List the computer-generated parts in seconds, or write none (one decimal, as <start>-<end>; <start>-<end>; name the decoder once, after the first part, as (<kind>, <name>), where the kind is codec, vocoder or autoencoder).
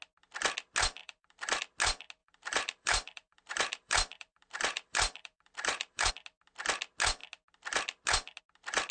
1.0-1.6 (vocoder, BigVGAN v2); 2.2-6.1